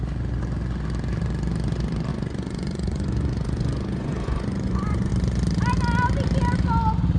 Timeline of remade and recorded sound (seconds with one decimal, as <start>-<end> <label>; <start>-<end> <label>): 0.0-2.1 recorded; 2.1-5.1 remade; 5.1-7.2 recorded

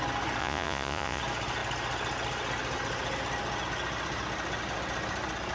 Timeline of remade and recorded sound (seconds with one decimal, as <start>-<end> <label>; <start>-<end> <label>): 0.0-0.4 recorded; 0.4-1.2 remade; 1.2-5.5 recorded